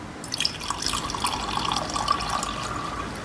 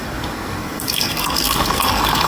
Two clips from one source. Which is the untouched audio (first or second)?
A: first